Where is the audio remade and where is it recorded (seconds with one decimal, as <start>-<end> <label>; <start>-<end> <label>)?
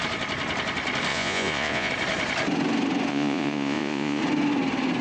0.0-1.1 recorded; 1.1-1.9 remade; 1.9-3.1 recorded; 3.1-4.2 remade; 4.2-5.0 recorded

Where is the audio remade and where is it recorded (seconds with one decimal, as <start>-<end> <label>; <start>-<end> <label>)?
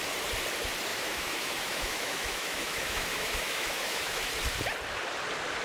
0.0-0.9 recorded; 0.9-4.3 remade; 4.3-5.6 recorded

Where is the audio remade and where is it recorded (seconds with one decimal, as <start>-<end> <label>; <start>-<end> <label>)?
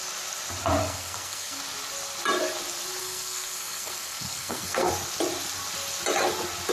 0.0-0.8 recorded; 0.8-1.6 remade; 1.6-3.0 recorded; 3.0-4.9 remade; 4.9-6.7 recorded